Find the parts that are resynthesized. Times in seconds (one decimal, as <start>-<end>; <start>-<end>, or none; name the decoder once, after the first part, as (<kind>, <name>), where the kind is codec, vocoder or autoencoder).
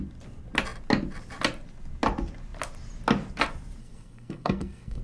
3.8-5.0 (codec, SNAC)